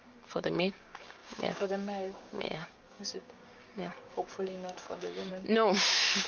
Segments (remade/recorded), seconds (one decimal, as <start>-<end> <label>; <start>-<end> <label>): 0.0-6.3 remade